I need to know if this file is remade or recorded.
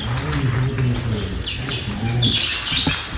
recorded